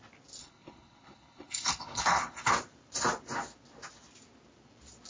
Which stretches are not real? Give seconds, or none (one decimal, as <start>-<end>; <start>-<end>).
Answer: 0.4-2.5